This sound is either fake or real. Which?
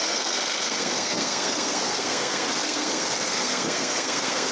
fake